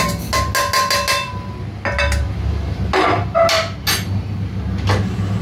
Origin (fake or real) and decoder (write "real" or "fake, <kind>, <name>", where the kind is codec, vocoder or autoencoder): real